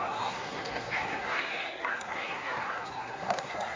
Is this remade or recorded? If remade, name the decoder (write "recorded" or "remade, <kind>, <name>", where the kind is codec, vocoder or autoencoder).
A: remade, codec, SNAC